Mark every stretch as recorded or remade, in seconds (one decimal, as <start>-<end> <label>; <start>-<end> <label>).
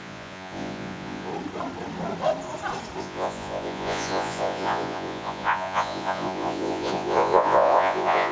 0.0-1.3 remade; 1.3-3.0 recorded; 3.0-8.3 remade